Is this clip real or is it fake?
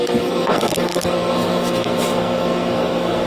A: fake